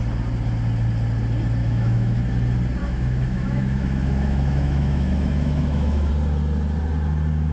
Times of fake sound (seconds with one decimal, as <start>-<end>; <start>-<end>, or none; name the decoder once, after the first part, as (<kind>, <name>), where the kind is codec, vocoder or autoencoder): 1.6-2.2 (autoencoder, DAC-VAE); 2.8-6.1